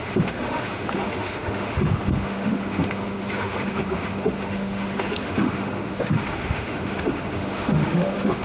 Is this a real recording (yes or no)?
no